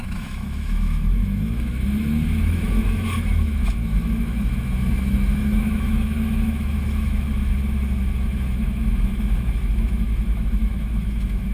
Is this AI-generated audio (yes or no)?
yes